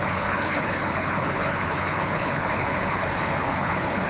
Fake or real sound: fake